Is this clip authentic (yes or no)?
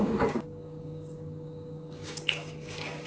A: no